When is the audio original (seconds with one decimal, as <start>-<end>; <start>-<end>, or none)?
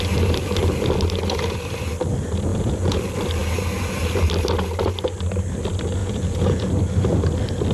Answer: 0.0-2.5; 3.0-6.0; 6.7-7.7